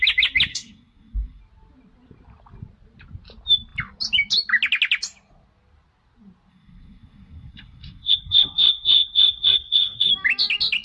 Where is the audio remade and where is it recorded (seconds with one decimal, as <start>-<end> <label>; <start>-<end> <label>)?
0.0-0.5 recorded; 0.5-1.4 remade; 1.4-6.5 recorded; 6.5-10.1 remade; 10.1-10.8 recorded